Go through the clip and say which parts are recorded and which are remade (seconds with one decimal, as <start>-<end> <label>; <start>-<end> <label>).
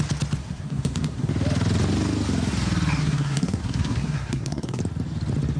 0.0-0.4 recorded; 0.4-1.3 remade; 1.3-3.0 recorded; 3.0-4.8 remade; 4.8-5.6 recorded